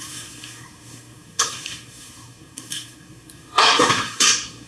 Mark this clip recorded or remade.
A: remade